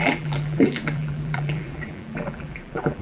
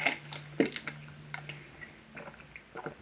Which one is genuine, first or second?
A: second